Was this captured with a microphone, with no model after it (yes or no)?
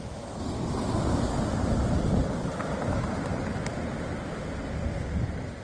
yes